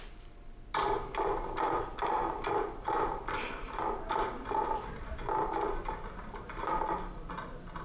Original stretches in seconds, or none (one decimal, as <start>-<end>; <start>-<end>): 0.0-7.8